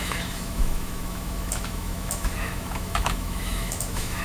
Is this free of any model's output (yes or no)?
no